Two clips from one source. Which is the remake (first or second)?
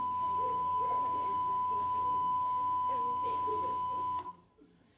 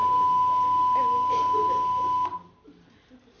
first